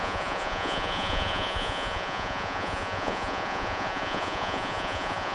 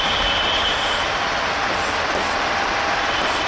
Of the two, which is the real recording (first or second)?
second